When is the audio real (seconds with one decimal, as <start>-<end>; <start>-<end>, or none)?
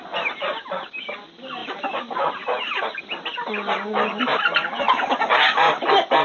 0.0-1.6; 3.0-4.2; 4.9-6.2